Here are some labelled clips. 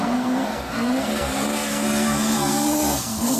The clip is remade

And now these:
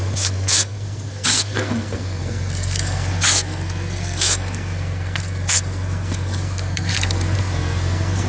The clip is remade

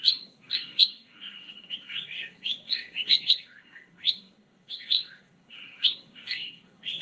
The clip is remade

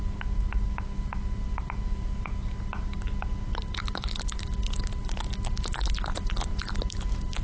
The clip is recorded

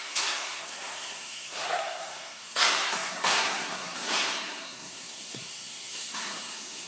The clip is remade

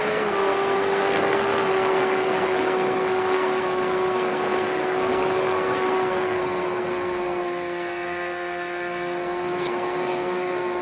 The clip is remade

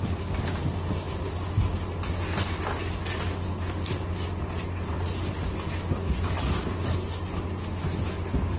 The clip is recorded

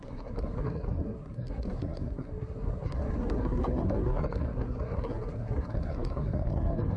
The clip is remade